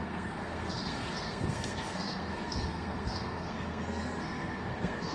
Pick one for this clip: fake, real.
fake